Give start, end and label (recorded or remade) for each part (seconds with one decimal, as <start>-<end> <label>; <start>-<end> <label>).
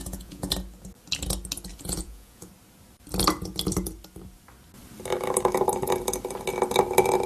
0.0-0.5 remade; 0.5-1.7 recorded; 1.7-2.5 remade; 2.5-7.3 recorded